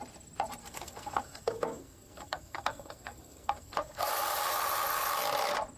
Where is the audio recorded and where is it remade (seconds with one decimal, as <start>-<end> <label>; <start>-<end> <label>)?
0.0-0.6 recorded; 0.6-4.1 remade; 4.1-5.8 recorded